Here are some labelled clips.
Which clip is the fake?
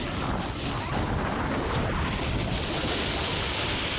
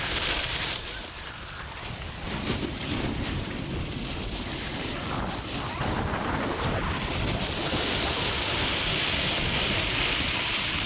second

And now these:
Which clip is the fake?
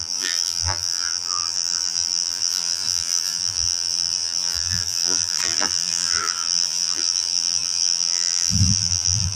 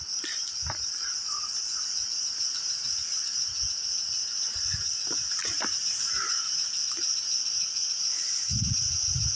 first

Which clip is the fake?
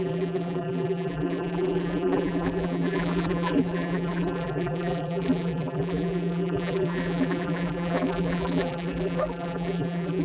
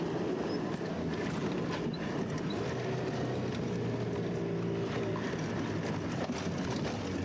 first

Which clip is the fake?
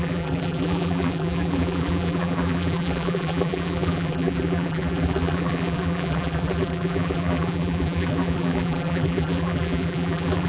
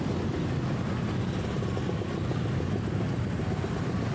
first